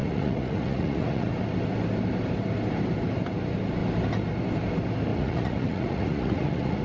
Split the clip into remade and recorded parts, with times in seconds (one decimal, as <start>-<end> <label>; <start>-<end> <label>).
0.0-1.3 remade; 1.3-5.1 recorded; 5.1-6.8 remade